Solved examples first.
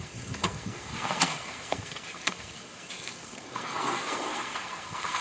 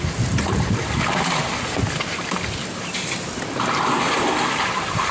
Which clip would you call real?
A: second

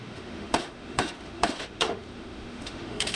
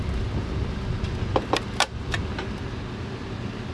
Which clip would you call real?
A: second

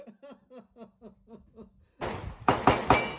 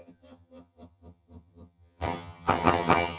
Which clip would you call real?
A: first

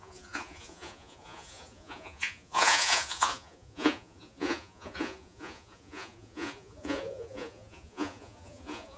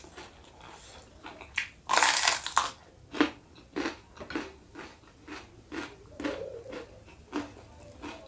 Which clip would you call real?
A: second